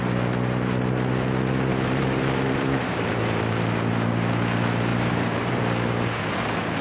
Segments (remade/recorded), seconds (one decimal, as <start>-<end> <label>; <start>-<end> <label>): 0.0-1.7 recorded; 1.7-3.4 remade; 3.4-4.9 recorded; 4.9-5.6 remade; 5.6-6.8 recorded